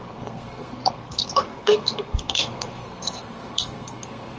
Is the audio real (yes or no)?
no